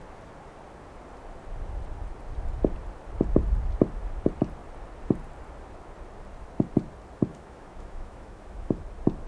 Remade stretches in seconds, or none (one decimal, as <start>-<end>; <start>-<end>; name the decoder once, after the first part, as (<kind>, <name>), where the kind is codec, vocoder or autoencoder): 7.3-8.8 (autoencoder, DAC-VAE)